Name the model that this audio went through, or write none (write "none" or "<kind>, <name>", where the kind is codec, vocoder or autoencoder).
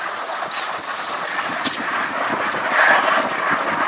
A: none